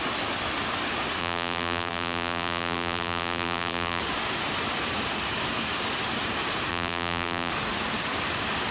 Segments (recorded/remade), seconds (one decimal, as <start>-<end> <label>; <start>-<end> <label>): 0.0-1.2 recorded; 1.2-4.0 remade; 4.0-6.7 recorded; 6.7-7.5 remade; 7.5-8.7 recorded